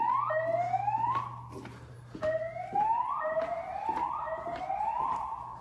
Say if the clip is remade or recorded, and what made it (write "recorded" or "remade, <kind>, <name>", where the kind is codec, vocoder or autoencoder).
recorded